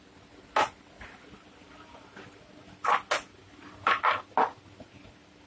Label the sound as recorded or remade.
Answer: recorded